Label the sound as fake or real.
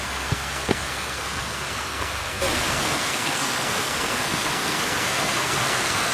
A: fake